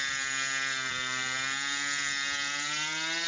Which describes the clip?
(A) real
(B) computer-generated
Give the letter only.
A